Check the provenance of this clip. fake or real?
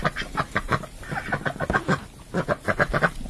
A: real